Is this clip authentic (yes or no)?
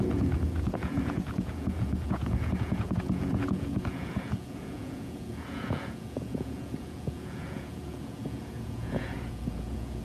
no